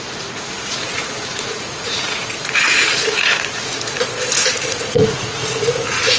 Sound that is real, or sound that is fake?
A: fake